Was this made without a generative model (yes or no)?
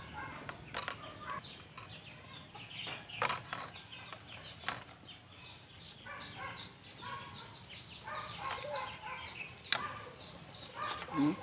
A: yes